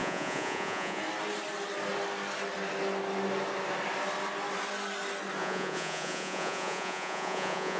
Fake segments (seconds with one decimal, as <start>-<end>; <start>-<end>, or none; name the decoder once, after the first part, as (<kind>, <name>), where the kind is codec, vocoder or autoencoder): 0.0-1.0 (vocoder, Vocos); 5.4-7.8

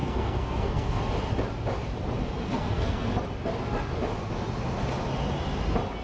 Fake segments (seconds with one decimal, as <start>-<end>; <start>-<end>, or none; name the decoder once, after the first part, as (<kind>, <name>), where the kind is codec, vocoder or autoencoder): 0.0-1.0 (codec, SNAC); 2.2-3.1